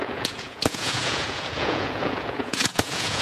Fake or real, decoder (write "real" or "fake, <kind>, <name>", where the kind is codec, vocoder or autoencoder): fake, vocoder, Vocos